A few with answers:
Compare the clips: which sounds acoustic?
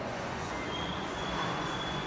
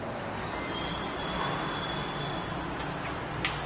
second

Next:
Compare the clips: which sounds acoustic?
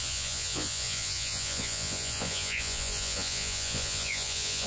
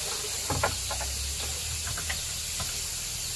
second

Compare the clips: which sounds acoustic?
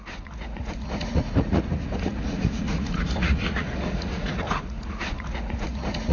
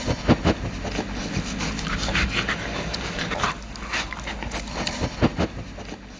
second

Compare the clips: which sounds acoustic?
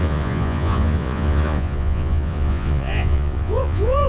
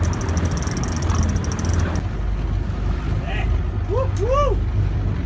second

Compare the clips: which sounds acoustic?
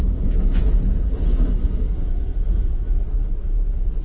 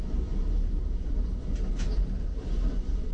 second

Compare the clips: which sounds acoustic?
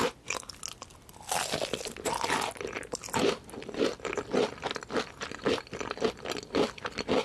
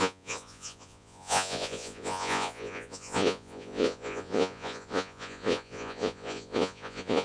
first